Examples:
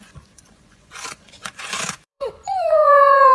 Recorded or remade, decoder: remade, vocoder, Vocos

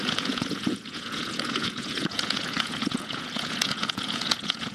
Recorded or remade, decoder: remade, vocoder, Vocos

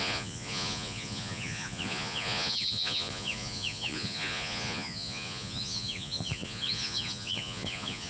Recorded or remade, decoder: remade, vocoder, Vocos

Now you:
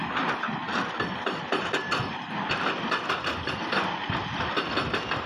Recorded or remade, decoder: recorded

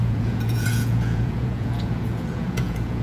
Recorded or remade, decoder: remade, vocoder, Vocos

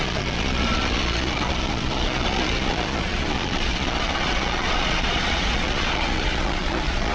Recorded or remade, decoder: remade, vocoder, Vocos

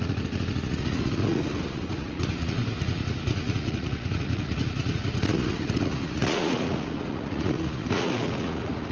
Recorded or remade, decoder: remade, vocoder, Vocos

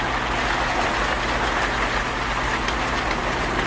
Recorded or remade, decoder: recorded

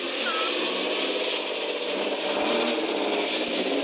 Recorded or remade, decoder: recorded